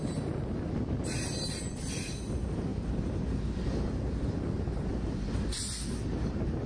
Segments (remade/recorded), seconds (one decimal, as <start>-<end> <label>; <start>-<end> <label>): 0.0-6.7 recorded